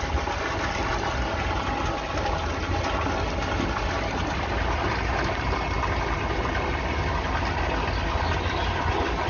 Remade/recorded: recorded